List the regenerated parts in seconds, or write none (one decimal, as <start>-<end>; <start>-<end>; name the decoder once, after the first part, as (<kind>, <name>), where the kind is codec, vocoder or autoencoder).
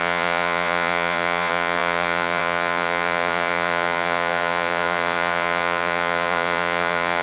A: 0.0-7.2 (vocoder, Vocos)